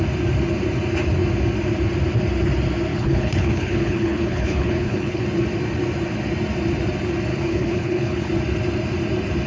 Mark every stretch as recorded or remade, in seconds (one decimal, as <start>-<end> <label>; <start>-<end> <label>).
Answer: 0.0-2.9 recorded; 2.9-5.2 remade; 5.2-7.3 recorded; 7.3-8.3 remade; 8.3-9.5 recorded